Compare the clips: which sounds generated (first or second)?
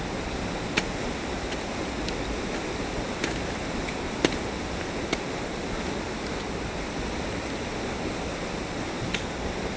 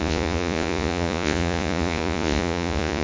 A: second